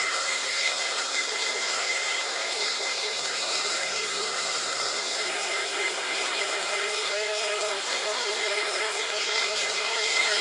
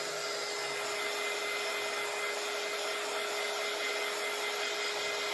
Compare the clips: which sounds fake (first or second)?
first